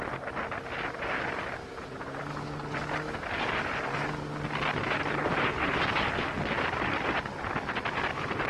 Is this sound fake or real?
real